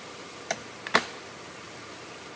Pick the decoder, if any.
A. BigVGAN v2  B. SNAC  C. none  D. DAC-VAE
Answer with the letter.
C